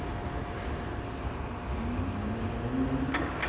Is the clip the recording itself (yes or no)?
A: yes